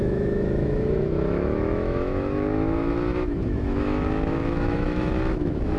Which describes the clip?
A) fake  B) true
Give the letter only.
A